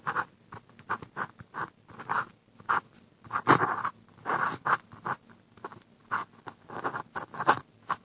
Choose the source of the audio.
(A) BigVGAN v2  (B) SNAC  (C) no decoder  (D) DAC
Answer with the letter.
C